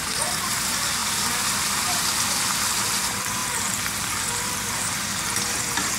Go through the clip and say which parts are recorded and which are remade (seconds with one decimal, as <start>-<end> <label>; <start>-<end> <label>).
0.0-6.0 remade

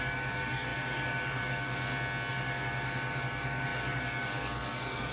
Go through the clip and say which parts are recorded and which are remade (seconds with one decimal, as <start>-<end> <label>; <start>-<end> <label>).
0.0-1.8 remade; 1.8-2.3 recorded; 2.3-5.1 remade

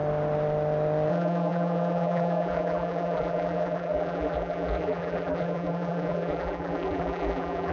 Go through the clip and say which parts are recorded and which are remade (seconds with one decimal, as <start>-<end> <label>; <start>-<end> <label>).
0.0-1.1 recorded; 1.1-7.7 remade